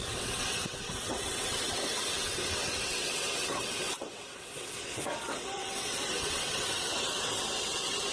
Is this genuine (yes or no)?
no